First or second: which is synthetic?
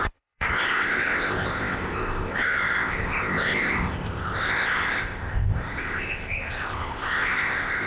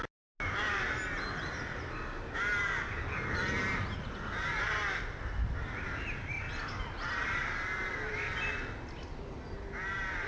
first